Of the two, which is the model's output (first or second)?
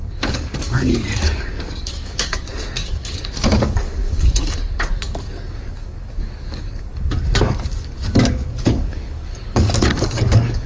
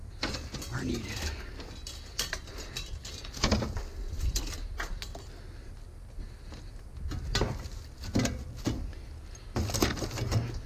first